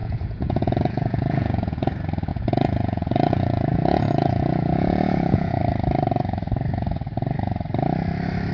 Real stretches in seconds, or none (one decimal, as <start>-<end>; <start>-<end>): 1.9-2.3; 5.6-8.5